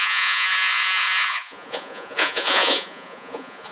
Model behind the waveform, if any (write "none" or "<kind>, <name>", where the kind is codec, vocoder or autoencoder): vocoder, Vocos